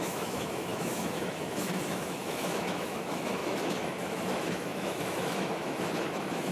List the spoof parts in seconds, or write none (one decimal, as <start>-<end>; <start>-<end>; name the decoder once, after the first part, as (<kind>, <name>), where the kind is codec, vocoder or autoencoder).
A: 0.0-6.5 (autoencoder, DAC-VAE)

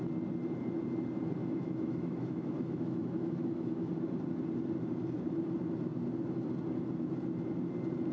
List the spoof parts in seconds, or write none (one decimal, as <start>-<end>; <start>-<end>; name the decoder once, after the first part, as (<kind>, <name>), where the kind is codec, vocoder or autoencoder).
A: 1.4-3.9 (autoencoder, DAC-VAE)

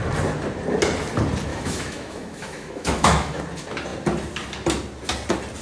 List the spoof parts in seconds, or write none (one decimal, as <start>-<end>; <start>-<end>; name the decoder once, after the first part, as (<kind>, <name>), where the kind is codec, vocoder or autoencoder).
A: 1.5-3.4 (autoencoder, DAC-VAE)